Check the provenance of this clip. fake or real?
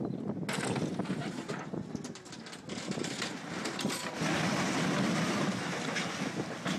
real